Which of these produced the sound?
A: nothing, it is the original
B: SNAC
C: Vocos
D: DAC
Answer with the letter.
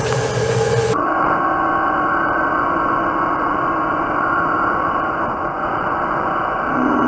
C